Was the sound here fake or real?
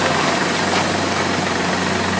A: real